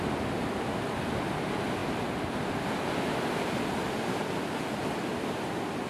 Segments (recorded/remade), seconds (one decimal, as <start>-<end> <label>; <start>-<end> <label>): 0.0-5.9 recorded